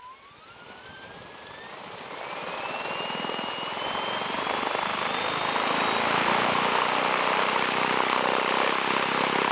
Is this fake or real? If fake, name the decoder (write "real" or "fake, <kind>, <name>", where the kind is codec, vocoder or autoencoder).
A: real